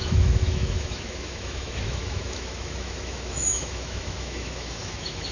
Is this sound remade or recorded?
remade